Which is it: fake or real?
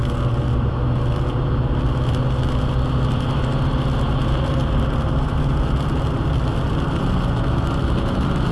real